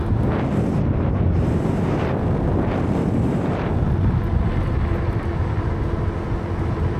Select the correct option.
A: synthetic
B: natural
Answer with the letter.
B